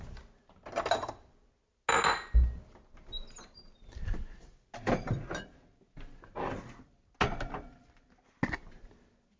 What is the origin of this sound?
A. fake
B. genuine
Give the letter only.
B